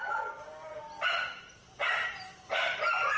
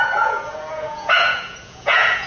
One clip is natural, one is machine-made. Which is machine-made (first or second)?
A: second